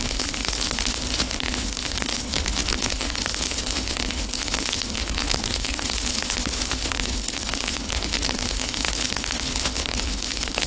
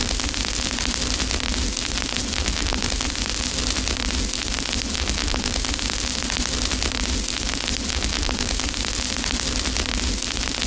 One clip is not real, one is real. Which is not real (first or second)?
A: first